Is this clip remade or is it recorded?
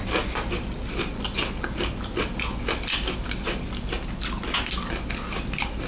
recorded